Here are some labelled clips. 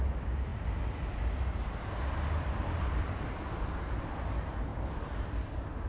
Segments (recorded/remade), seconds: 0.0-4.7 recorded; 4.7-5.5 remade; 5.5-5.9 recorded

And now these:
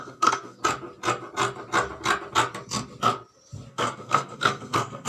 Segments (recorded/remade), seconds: 0.0-0.6 remade; 0.6-3.7 recorded; 3.7-5.1 remade

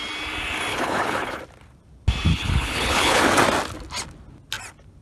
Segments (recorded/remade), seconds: 0.0-0.7 recorded; 0.7-1.4 remade; 1.4-2.3 recorded; 2.3-3.2 remade; 3.2-5.0 recorded

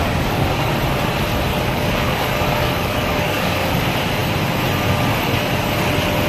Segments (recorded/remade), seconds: 0.0-0.7 remade; 0.7-1.5 recorded; 1.5-3.7 remade; 3.7-6.3 recorded

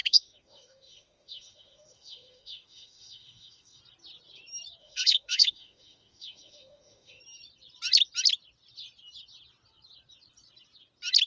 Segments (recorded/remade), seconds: 0.0-3.8 remade; 3.8-4.8 recorded; 4.8-7.2 remade; 7.2-11.3 recorded